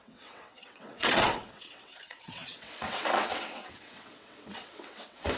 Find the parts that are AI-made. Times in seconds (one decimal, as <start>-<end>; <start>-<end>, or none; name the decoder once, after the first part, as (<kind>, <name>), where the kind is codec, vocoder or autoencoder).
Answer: 0.0-5.4 (vocoder, WaveNeXt)